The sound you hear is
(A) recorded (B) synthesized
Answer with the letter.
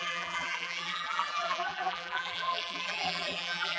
B